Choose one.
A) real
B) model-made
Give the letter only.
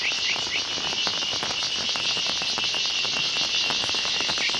A